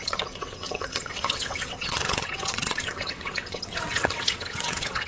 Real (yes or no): no